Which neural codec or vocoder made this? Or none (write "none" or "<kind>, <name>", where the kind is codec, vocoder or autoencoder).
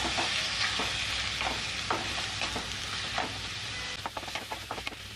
none